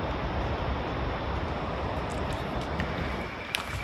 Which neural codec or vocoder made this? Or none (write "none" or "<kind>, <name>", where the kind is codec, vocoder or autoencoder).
vocoder, BigVGAN v2